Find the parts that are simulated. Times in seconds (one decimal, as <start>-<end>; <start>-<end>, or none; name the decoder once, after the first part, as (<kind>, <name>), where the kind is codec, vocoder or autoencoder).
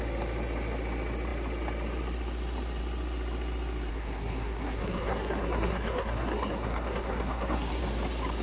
3.9-7.8 (codec, SNAC)